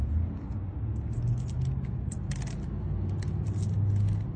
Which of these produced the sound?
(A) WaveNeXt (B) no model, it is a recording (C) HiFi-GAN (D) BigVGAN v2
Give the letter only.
B